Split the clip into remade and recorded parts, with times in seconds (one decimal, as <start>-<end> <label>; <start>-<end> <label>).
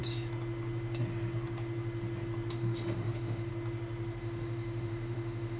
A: 0.0-2.5 recorded; 2.5-3.5 remade; 3.5-4.2 recorded; 4.2-5.6 remade